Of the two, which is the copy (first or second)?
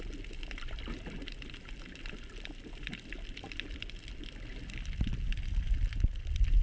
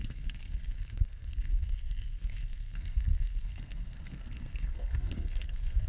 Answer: second